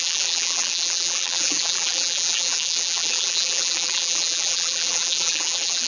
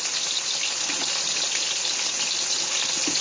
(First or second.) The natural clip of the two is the second